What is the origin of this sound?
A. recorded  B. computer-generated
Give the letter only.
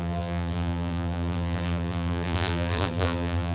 B